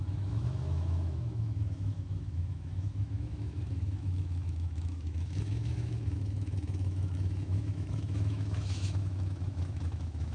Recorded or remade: remade